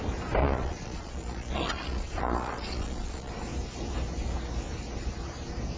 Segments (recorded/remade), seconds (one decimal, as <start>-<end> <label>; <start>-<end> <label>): 0.0-0.4 recorded; 0.4-3.3 remade; 3.3-5.8 recorded